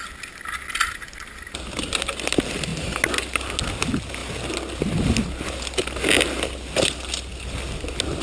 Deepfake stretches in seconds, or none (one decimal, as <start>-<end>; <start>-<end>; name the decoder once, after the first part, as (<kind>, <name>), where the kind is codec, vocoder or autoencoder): none